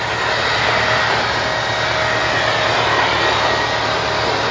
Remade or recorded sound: recorded